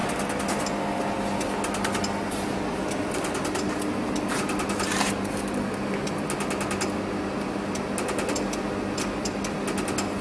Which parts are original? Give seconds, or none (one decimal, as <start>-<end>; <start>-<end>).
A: 0.0-10.2